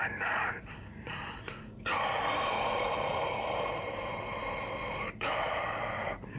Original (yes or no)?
no